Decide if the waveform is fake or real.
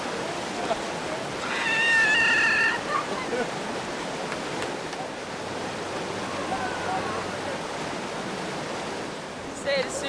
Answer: real